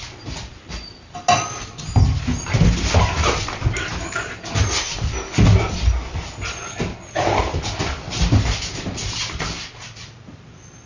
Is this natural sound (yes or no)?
yes